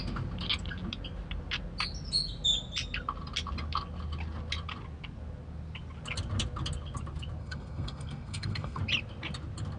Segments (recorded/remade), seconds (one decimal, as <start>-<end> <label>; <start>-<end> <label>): 0.0-7.4 recorded; 7.4-8.8 remade; 8.8-9.8 recorded